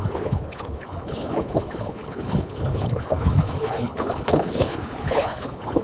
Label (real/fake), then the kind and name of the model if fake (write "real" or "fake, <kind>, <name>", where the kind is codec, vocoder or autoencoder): fake, codec, HILCodec